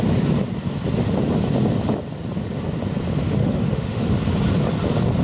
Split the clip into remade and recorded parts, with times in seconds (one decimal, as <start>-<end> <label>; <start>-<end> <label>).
0.0-3.4 recorded; 3.4-4.2 remade; 4.2-5.2 recorded